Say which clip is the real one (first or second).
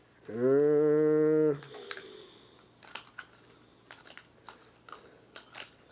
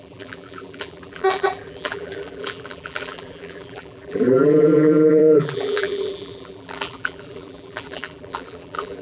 first